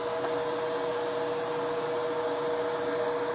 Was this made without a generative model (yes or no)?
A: yes